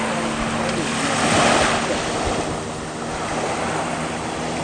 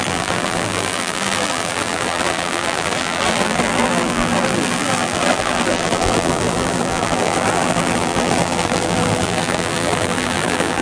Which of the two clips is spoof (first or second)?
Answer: second